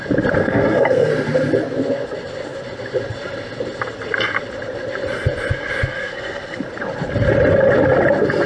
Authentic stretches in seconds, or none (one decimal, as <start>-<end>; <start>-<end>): 0.0-0.4; 1.1-5.9; 6.6-8.5